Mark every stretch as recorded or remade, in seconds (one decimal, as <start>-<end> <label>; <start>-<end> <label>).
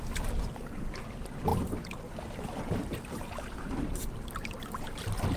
0.0-5.4 recorded